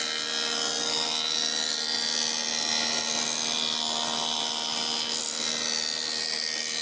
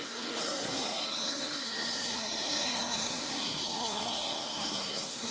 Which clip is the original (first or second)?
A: first